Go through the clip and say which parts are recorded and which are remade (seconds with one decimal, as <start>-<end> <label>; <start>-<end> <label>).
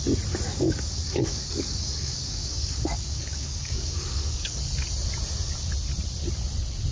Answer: 0.0-0.5 recorded; 0.5-4.6 remade; 4.6-6.9 recorded